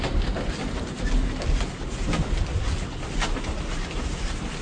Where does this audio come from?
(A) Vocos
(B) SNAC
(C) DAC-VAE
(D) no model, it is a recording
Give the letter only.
D